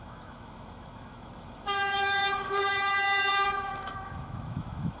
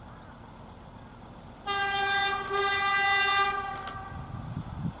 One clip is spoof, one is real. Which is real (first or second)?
second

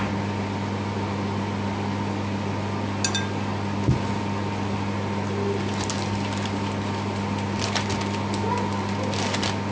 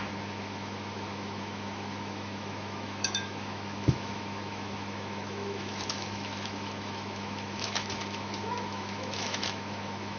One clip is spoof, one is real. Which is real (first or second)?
first